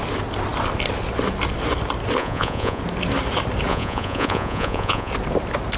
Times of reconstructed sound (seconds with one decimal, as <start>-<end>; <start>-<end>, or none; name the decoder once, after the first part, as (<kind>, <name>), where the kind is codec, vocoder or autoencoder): 2.2-2.8 (vocoder, Vocos); 3.7-5.1